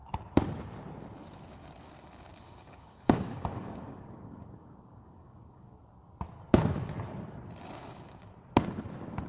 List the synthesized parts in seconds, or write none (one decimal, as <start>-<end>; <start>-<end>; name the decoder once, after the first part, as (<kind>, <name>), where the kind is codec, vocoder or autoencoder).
2.3-5.8 (codec, DAC); 7.8-8.3